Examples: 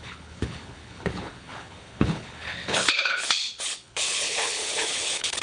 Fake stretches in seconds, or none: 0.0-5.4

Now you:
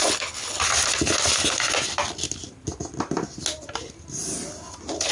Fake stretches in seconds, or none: 0.0-0.6

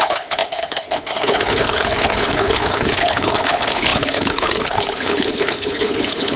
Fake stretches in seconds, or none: 0.0-6.4

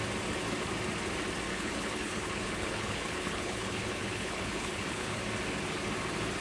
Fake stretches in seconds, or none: 1.5-5.2

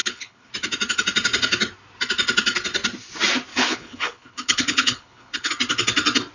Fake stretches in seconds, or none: 0.0-0.5; 3.5-5.5